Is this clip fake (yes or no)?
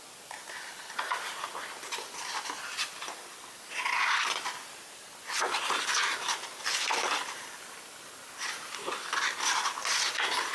no